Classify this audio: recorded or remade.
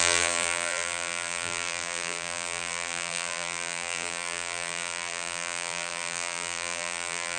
remade